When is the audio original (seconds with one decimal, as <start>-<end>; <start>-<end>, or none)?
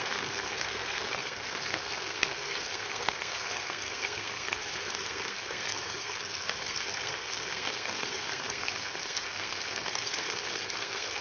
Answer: none